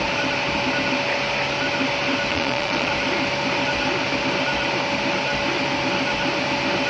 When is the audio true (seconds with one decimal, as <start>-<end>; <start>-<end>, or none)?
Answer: 0.0-2.3; 2.9-6.9